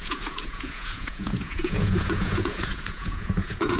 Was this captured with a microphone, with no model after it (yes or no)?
no